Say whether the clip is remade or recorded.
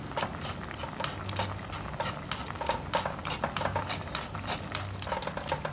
recorded